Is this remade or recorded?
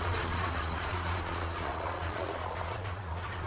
remade